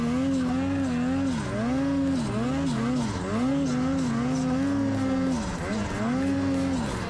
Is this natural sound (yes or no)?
yes